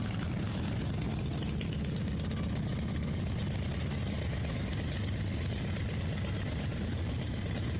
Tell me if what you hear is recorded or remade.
recorded